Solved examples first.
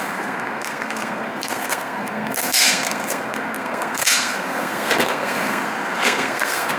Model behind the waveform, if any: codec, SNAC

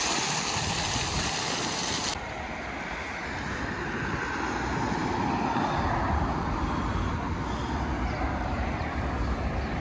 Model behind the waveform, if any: none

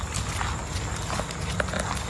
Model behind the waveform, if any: none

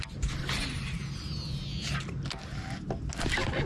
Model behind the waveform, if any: none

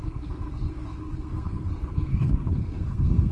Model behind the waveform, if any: codec, SNAC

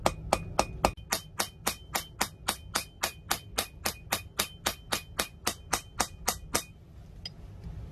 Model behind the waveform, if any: none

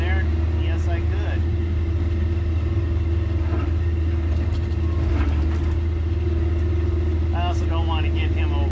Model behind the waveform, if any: none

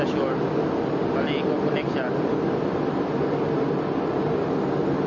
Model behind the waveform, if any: none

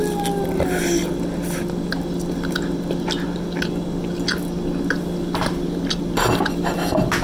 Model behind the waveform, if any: none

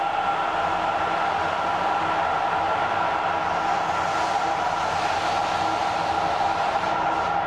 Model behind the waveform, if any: none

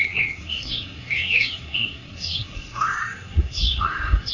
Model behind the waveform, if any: codec, SNAC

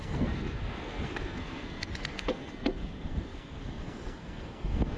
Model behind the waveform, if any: codec, SNAC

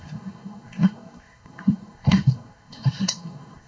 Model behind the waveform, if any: codec, SNAC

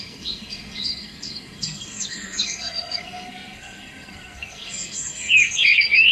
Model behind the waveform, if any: codec, SNAC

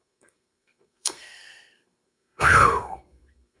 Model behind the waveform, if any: codec, SNAC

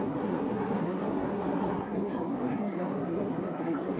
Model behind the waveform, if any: codec, SNAC